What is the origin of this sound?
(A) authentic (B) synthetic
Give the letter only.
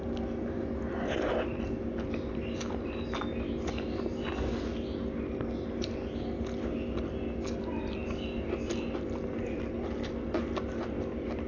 A